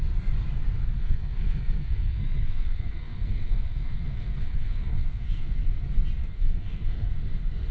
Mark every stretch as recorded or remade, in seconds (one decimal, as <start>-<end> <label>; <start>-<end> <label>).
0.0-1.0 recorded; 1.0-5.6 remade; 5.6-6.2 recorded; 6.2-7.1 remade; 7.1-7.7 recorded